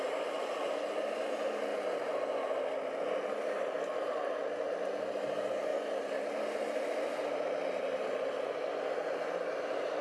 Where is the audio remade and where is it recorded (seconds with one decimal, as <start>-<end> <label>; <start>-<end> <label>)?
0.0-10.0 recorded